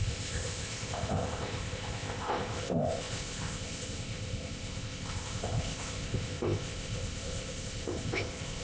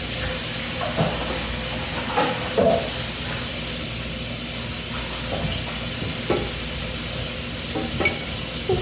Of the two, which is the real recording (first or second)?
second